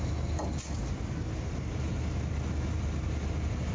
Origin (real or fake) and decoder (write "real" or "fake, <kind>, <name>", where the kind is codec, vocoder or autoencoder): real